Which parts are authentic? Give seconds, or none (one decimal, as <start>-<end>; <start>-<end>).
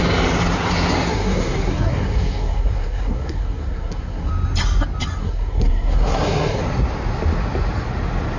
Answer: 0.0-1.1; 4.3-5.2; 6.6-8.4